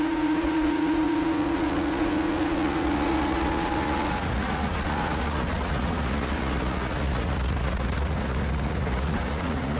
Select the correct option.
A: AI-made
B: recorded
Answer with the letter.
A